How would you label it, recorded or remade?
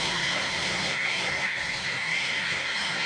remade